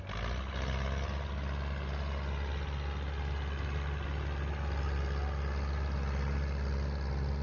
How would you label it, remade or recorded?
recorded